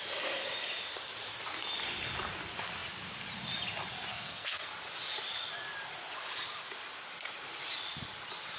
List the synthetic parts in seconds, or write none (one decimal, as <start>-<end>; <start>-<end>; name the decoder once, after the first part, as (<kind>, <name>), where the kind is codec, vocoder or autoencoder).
4.1-4.7 (codec, SNAC)